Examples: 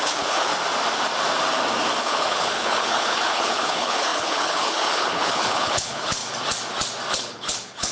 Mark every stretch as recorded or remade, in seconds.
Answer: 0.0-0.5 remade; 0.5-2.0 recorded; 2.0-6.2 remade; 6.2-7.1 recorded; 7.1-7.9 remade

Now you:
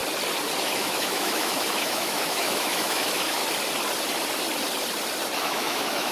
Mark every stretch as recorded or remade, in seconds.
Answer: 0.0-0.6 recorded; 0.6-3.4 remade; 3.4-5.4 recorded; 5.4-6.1 remade

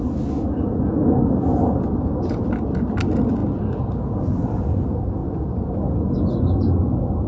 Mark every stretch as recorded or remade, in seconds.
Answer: 0.0-7.3 recorded

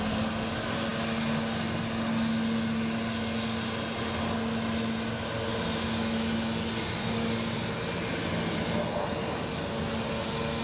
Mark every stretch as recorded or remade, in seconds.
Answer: 0.0-10.6 recorded

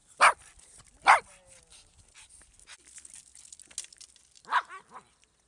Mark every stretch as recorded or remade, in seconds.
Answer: 0.0-5.5 recorded

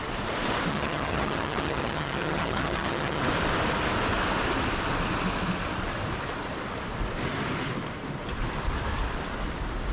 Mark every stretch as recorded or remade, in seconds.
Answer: 0.0-0.7 recorded; 0.7-3.2 remade; 3.2-9.9 recorded